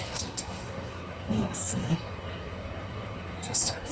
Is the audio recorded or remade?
remade